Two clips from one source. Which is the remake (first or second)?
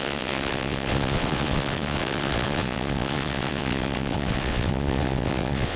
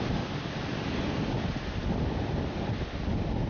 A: first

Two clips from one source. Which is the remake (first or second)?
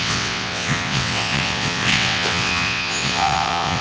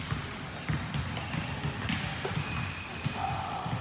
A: first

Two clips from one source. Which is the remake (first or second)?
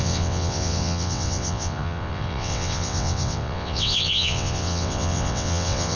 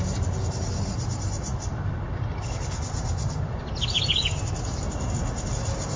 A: first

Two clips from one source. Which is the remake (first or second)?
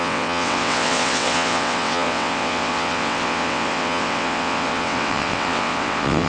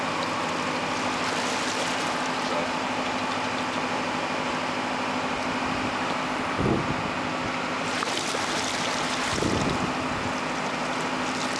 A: first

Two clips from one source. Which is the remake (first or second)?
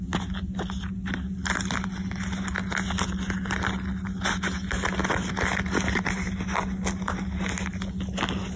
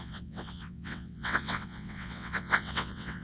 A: second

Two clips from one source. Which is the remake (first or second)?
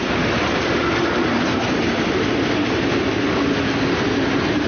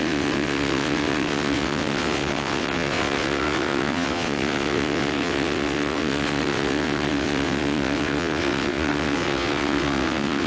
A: second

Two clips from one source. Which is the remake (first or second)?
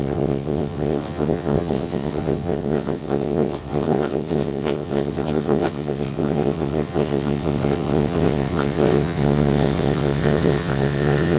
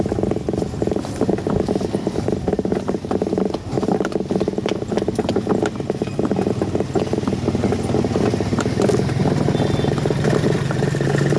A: first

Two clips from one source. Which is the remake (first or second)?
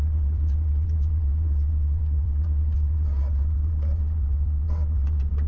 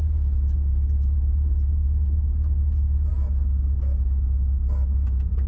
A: first